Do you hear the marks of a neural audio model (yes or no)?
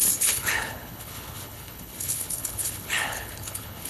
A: yes